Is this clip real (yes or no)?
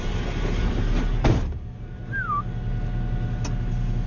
yes